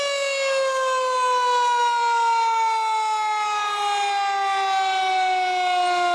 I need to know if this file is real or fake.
real